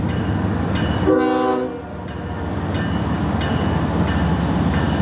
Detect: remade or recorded recorded